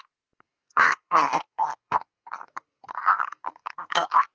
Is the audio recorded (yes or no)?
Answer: no